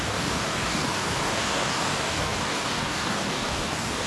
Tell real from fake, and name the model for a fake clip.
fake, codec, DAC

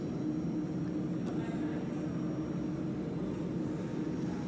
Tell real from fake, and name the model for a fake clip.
real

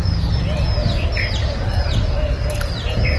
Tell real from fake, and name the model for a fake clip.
real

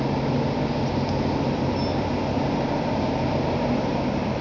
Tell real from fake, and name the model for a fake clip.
real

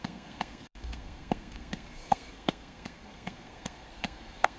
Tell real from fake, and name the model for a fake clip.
fake, codec, SNAC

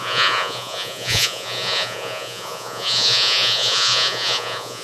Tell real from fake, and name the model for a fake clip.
fake, vocoder, Vocos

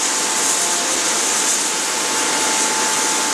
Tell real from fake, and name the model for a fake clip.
real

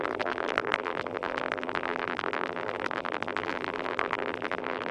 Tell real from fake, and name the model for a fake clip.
fake, vocoder, BigVGAN v2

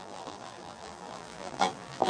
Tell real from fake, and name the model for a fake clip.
fake, vocoder, BigVGAN v2